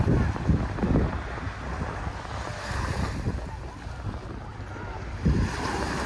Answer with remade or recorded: recorded